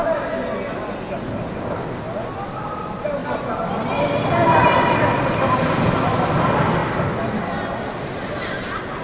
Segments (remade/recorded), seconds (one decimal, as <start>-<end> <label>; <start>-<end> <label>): 0.0-3.2 recorded; 3.2-6.0 remade; 6.0-6.8 recorded; 6.8-8.1 remade; 8.1-9.0 recorded